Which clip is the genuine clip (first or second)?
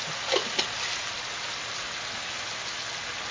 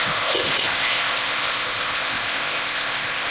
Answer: first